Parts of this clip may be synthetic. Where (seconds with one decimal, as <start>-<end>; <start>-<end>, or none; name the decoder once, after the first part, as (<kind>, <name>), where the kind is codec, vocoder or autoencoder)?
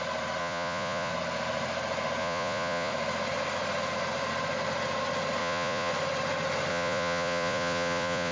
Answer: 0.4-1.1 (vocoder, Vocos); 2.2-2.9; 5.4-5.9; 6.7-8.3